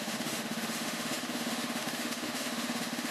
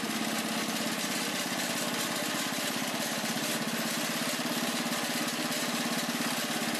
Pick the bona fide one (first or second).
second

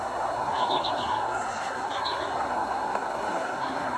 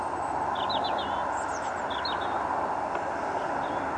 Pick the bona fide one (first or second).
second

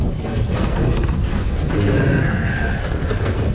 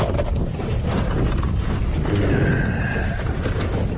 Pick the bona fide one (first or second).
second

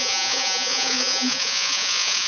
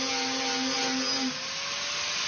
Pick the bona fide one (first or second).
second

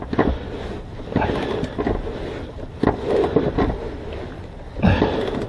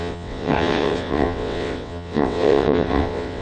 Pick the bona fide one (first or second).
first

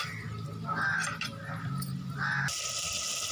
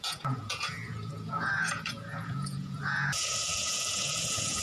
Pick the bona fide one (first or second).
first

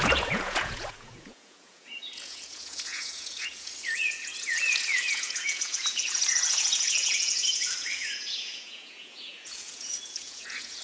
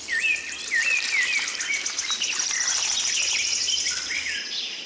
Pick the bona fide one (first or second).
second